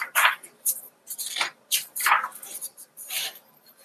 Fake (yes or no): yes